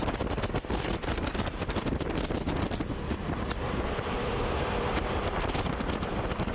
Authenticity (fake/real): real